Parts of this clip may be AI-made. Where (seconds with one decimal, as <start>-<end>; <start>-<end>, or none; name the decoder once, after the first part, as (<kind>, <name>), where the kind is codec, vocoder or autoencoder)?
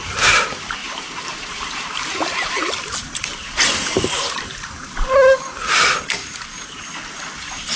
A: 0.8-5.1 (vocoder, BigVGAN v2); 6.2-6.8